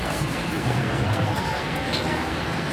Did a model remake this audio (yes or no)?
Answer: yes